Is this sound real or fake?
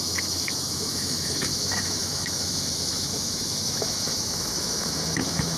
fake